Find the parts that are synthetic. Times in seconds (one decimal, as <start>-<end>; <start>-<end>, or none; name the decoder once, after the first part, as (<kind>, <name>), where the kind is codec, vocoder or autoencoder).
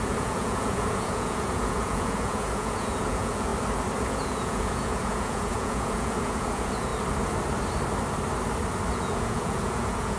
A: 0.0-3.5 (vocoder, Vocos); 4.0-6.9; 8.9-10.2